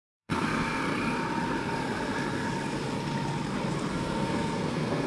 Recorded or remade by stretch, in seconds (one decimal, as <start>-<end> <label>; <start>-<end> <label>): 0.0-0.8 remade; 0.8-3.9 recorded; 3.9-5.1 remade